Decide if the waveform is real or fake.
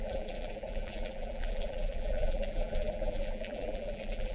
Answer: fake